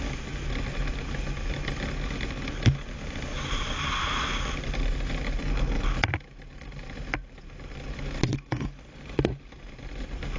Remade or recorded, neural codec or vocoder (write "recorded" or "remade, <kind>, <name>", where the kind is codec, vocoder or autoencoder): recorded